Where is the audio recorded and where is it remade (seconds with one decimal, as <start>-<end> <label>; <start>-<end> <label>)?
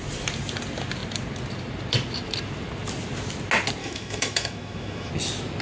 0.0-3.8 recorded; 3.8-5.1 remade; 5.1-5.6 recorded